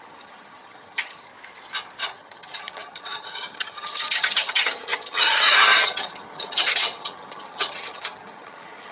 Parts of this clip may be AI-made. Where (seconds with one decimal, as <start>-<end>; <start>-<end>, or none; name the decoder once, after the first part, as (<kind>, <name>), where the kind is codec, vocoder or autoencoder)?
0.0-1.3 (vocoder, HiFi-GAN); 2.0-8.9